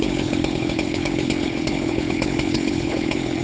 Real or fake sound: fake